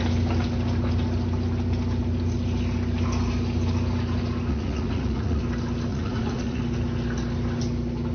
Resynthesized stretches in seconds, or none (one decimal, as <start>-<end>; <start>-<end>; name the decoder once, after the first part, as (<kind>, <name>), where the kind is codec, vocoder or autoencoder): 4.5-5.4 (vocoder, Vocos); 5.9-6.6